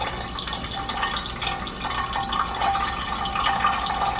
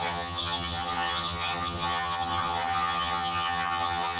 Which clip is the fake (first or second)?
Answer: second